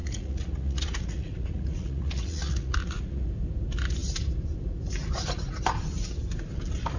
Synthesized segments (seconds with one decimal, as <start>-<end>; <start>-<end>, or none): 0.0-3.3